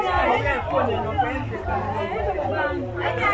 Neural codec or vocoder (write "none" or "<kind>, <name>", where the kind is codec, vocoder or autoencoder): none